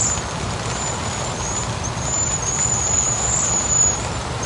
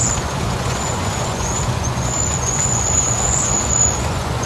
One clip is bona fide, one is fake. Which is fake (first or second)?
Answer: second